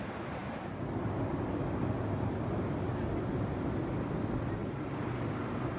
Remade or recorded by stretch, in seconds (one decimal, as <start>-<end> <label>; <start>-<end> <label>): 0.0-4.6 recorded; 4.6-5.2 remade; 5.2-5.8 recorded